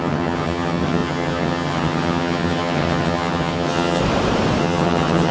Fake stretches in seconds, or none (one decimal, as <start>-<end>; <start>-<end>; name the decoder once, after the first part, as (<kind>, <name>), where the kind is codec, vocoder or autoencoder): 0.0-4.0 (vocoder, HiFi-GAN); 4.6-5.3